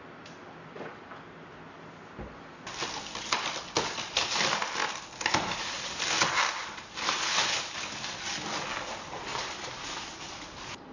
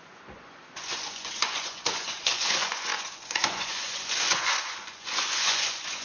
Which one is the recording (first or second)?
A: first